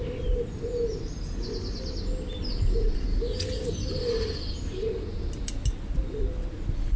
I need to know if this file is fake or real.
real